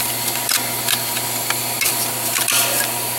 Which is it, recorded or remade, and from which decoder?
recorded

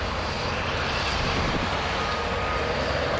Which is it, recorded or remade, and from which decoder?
remade, vocoder, BigVGAN v2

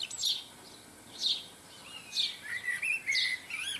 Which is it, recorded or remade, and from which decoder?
recorded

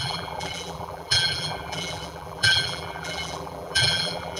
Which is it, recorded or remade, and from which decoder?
remade, vocoder, BigVGAN v2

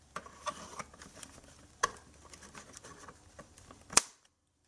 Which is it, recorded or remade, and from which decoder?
remade, vocoder, BigVGAN v2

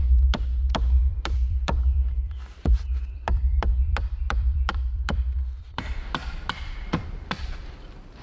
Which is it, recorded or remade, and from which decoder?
remade, vocoder, BigVGAN v2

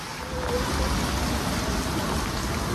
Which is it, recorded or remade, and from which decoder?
recorded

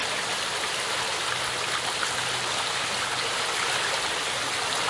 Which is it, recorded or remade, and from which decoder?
recorded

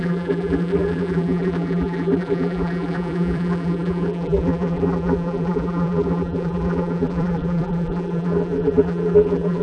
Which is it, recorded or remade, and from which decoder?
remade, vocoder, BigVGAN v2